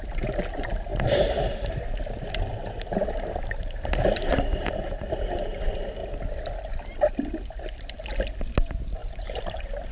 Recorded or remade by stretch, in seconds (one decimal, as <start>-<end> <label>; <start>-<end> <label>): 0.0-0.9 recorded; 0.9-1.8 remade; 1.8-2.5 recorded; 2.5-5.6 remade; 5.6-9.0 recorded; 9.0-9.9 remade